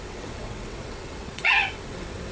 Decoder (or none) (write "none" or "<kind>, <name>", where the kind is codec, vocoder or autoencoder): vocoder, WaveNeXt